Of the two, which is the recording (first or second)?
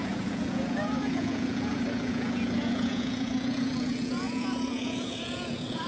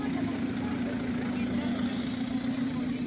second